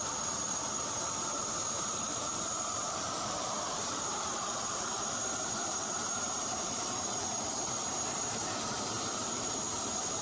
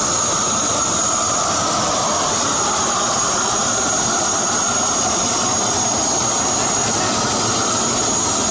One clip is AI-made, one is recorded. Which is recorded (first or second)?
second